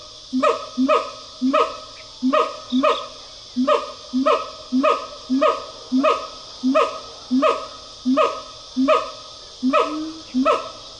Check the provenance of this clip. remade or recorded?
recorded